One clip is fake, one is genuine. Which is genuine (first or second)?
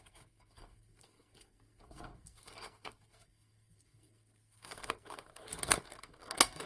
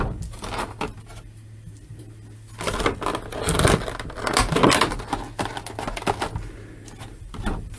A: second